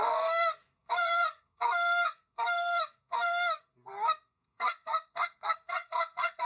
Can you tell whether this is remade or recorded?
remade